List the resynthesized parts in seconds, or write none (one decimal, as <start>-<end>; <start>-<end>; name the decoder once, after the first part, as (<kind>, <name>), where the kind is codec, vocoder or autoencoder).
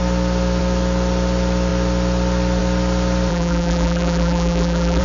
3.3-5.0 (vocoder, BigVGAN v2)